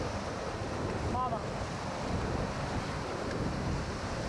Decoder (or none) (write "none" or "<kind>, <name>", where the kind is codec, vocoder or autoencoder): none